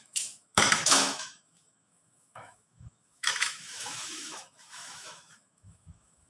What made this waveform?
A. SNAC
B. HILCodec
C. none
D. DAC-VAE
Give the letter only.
D